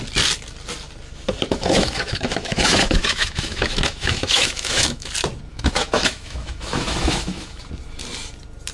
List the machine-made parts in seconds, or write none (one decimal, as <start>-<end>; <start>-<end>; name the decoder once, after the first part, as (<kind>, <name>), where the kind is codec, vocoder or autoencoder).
1.5-5.1 (autoencoder, DAC-VAE); 5.5-7.6